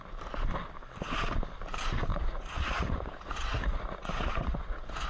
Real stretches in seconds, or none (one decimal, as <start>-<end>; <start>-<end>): 0.0-2.1